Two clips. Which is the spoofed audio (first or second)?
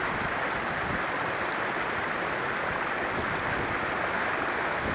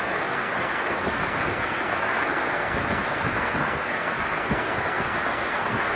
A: second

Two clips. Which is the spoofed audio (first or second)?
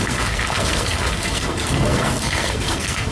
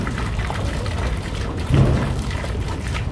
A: first